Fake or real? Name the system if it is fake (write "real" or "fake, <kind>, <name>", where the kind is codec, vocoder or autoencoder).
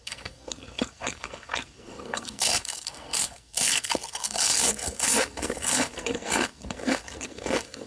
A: fake, codec, SNAC